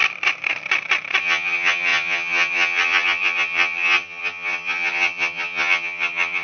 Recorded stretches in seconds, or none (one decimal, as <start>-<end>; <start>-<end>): 0.0-1.2